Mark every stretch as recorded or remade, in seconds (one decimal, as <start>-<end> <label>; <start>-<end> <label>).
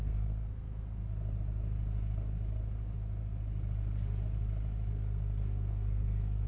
0.0-1.0 remade; 1.0-4.9 recorded; 4.9-6.5 remade